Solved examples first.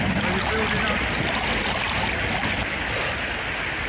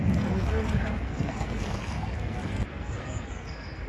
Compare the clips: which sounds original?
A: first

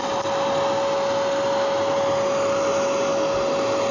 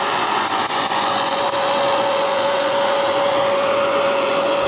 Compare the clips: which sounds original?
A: first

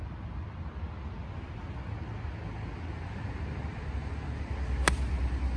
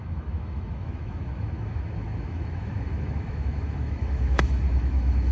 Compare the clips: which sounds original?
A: first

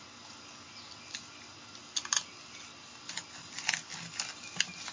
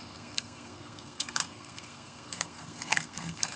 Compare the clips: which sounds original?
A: first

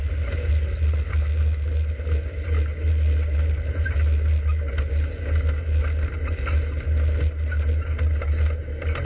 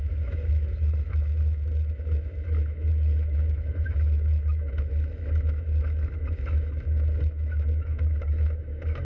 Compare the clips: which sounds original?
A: first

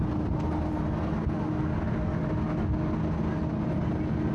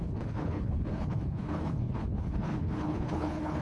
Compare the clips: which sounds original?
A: first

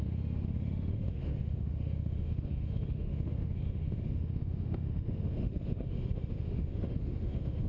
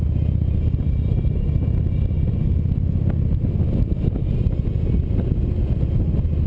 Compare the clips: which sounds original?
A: second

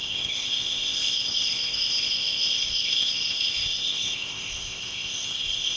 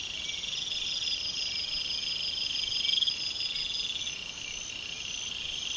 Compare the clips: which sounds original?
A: second